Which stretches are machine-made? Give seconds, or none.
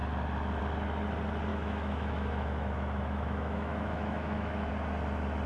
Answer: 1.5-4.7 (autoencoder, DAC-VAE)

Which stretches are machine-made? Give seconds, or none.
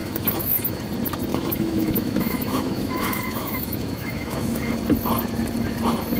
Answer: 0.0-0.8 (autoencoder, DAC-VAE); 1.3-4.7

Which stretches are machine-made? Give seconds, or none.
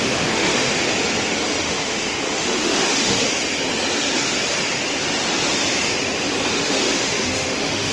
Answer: 0.0-0.7 (autoencoder, DAC-VAE); 1.6-3.4; 6.5-7.9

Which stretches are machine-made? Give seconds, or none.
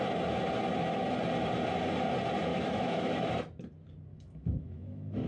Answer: 2.5-3.3 (autoencoder, DAC-VAE); 4.1-5.3